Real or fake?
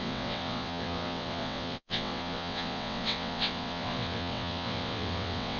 fake